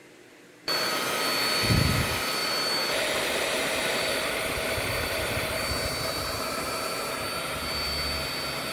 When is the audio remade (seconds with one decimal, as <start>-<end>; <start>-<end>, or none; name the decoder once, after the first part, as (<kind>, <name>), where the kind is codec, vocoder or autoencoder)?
0.0-1.0 (vocoder, BigVGAN v2); 2.4-5.7